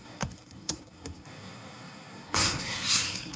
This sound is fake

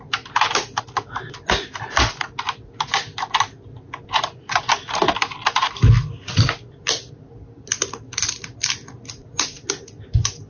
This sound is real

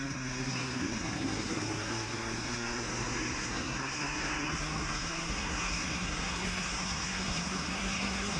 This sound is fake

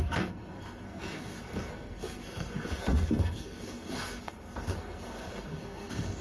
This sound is fake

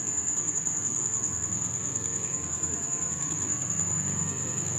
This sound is fake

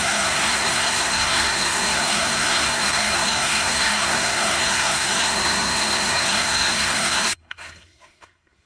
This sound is fake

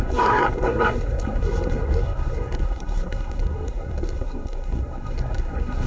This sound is fake